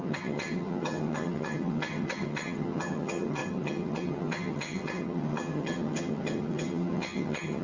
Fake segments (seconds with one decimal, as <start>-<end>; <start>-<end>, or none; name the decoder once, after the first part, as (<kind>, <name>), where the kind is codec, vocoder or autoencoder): 0.0-7.6 (vocoder, HiFi-GAN)

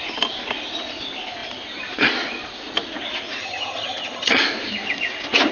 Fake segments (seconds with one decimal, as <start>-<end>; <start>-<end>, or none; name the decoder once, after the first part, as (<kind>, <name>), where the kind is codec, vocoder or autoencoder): 3.4-4.4 (vocoder, HiFi-GAN)

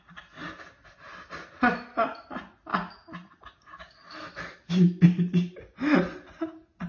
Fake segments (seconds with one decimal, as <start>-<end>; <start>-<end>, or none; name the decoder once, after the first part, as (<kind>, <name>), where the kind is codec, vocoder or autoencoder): none